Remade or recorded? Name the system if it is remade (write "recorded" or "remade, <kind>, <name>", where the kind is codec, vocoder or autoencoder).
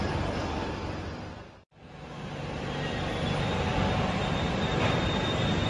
recorded